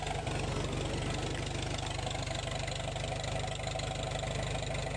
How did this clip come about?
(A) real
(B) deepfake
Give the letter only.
A